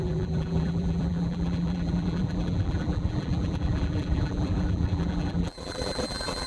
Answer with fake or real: fake